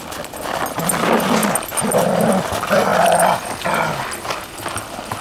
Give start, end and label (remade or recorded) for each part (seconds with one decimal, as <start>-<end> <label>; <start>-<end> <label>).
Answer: 0.0-5.2 recorded